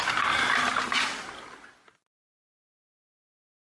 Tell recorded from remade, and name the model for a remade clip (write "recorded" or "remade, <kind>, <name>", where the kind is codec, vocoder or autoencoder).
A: recorded